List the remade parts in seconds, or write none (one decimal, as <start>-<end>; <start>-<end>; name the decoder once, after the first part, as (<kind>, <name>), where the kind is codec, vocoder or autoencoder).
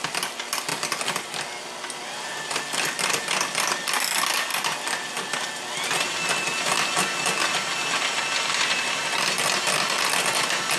none